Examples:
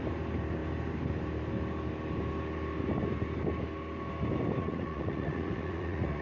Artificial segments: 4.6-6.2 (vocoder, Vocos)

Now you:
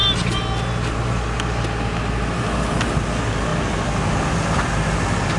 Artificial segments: none

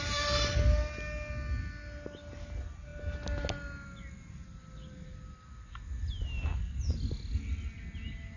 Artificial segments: none

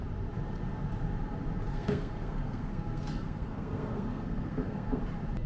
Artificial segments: 1.7-5.0 (codec, SNAC)